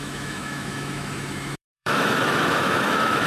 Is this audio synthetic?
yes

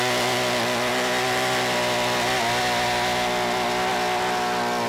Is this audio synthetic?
no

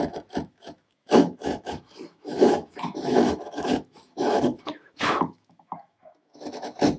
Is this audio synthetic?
yes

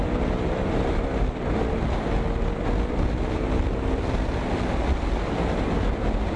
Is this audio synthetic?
no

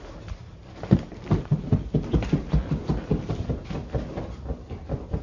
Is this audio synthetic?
no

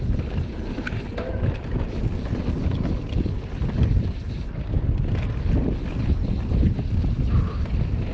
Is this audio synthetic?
no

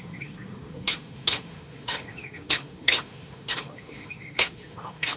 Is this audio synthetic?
yes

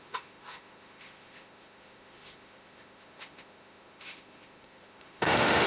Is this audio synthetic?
yes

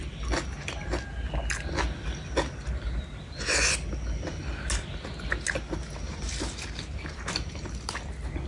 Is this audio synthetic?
no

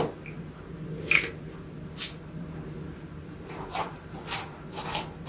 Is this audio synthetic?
no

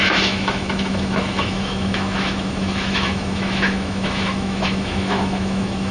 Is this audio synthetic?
yes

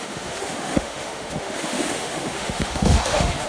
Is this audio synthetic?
yes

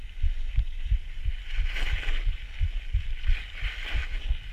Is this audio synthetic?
no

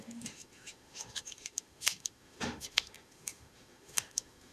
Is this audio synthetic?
yes